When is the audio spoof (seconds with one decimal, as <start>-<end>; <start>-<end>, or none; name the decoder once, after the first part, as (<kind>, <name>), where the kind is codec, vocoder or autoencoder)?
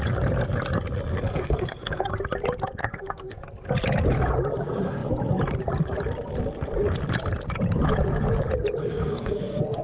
1.3-2.1 (codec, SNAC); 2.8-3.4; 8.8-9.8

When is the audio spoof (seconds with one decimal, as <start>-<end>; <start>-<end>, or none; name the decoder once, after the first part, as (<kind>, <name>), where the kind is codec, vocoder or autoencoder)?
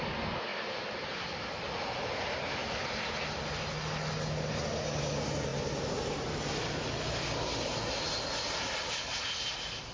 none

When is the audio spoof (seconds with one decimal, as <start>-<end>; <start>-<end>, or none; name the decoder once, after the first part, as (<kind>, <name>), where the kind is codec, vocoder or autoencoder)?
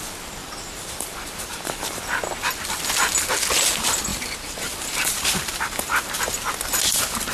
0.4-2.0 (vocoder, BigVGAN v2); 4.1-6.1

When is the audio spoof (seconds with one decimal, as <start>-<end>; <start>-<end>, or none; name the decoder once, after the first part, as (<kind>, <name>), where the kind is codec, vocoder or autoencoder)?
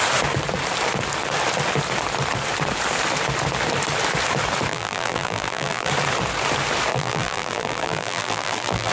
4.7-5.9 (vocoder, BigVGAN v2); 6.9-8.9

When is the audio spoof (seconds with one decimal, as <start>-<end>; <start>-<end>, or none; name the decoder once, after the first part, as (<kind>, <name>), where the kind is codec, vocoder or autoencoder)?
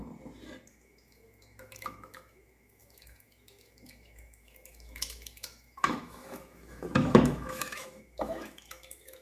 0.7-9.2 (autoencoder, DAC-VAE)